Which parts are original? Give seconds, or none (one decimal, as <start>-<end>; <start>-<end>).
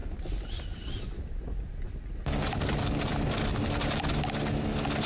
0.0-5.1